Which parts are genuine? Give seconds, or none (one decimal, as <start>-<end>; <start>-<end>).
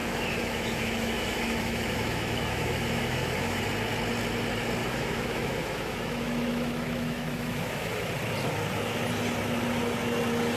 3.6-4.8; 8.1-10.6